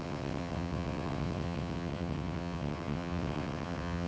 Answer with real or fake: fake